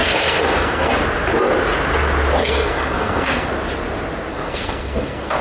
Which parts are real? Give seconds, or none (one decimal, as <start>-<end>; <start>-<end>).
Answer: 0.9-2.4; 3.5-4.3

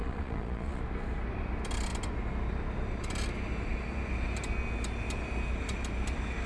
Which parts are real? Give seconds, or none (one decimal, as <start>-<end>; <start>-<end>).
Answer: 0.8-6.5

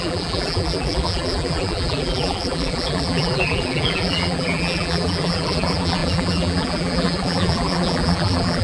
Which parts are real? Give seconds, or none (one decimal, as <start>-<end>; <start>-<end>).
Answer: none

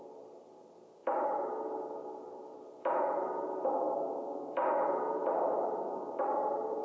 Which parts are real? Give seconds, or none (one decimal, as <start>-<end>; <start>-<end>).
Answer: 0.0-1.0; 2.6-5.2; 6.0-6.8

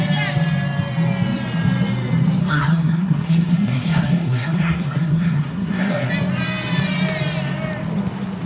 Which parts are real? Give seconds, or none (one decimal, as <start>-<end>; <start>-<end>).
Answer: 0.0-2.4; 6.1-8.5

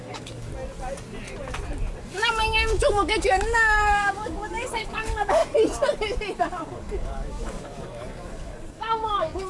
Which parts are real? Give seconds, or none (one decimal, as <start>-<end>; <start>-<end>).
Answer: 0.5-2.0; 5.4-6.4